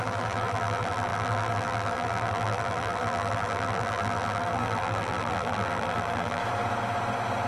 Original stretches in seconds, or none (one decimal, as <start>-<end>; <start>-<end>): 6.4-7.5